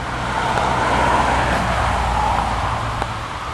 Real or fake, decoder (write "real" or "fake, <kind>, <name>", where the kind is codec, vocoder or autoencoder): real